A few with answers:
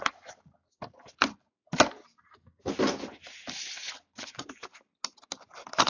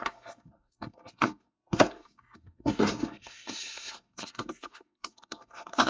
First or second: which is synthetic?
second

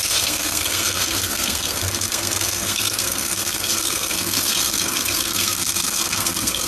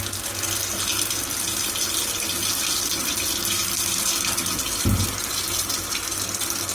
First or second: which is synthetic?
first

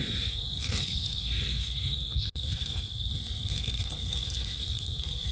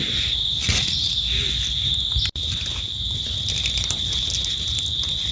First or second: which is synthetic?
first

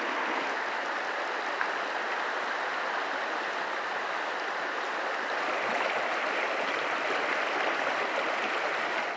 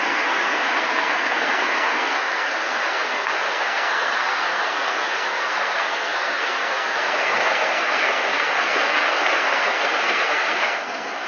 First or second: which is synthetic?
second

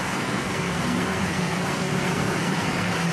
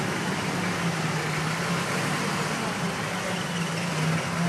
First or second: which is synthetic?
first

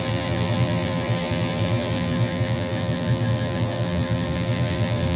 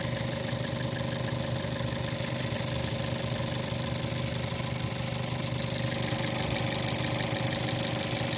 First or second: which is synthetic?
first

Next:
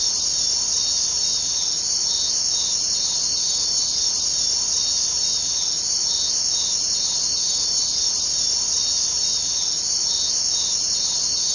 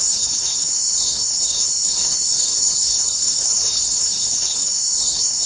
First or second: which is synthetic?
second